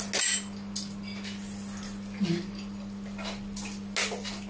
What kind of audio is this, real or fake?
real